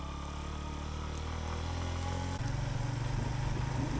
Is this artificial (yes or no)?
no